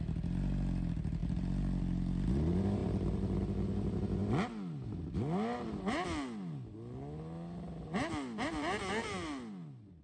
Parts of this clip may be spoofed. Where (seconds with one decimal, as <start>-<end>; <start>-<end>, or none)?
2.8-3.4